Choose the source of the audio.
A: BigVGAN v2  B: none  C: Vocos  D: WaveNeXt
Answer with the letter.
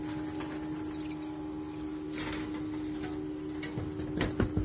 B